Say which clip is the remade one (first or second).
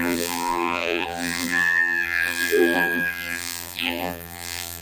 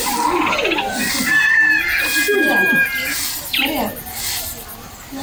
first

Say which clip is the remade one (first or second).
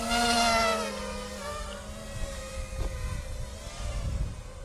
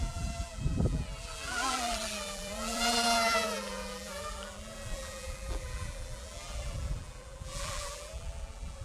second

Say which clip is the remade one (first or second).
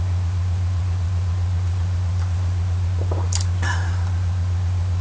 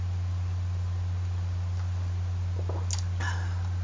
first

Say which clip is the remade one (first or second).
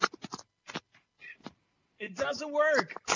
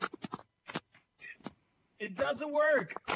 second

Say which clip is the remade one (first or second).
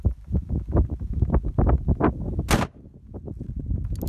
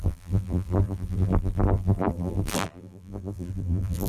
second